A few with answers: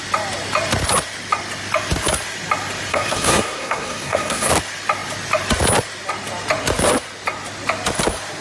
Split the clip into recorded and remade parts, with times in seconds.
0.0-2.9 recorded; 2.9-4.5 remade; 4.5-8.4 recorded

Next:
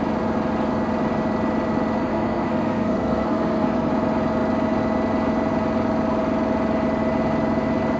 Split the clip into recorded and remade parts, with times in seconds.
0.0-2.0 recorded; 2.0-3.9 remade; 3.9-8.0 recorded